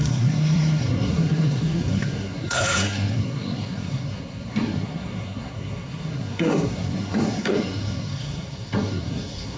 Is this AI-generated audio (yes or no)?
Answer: yes